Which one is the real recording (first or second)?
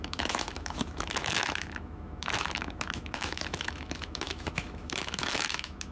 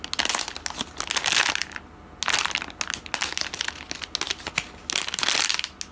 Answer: second